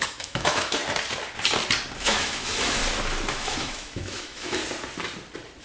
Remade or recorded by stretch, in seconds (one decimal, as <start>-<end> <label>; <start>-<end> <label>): 0.0-0.8 remade; 0.8-2.0 recorded; 2.0-2.8 remade; 2.8-3.3 recorded; 3.3-4.6 remade; 4.6-5.6 recorded